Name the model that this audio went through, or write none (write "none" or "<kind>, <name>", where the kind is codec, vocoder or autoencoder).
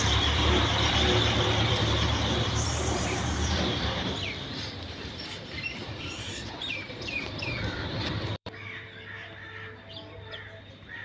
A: vocoder, BigVGAN v2